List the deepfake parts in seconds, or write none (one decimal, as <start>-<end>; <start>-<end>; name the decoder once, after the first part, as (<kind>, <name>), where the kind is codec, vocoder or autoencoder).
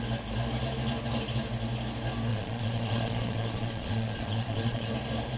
2.3-4.9 (vocoder, Vocos)